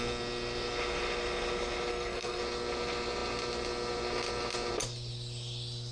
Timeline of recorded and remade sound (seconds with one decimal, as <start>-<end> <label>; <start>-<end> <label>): 0.0-1.9 recorded; 1.9-2.4 remade; 2.4-5.9 recorded